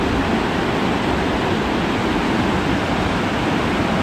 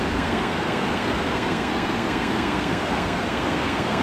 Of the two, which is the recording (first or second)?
first